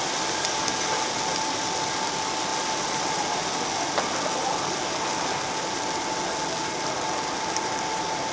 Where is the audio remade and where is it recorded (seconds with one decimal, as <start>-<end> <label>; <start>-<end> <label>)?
0.0-8.3 recorded